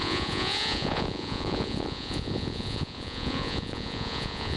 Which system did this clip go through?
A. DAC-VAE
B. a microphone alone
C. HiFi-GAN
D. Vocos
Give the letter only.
D